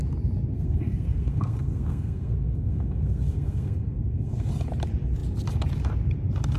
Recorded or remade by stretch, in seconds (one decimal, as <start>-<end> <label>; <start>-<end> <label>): 0.0-0.5 recorded; 0.5-4.5 remade; 4.5-6.6 recorded